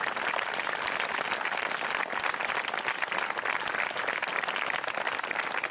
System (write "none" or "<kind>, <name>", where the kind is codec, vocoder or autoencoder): none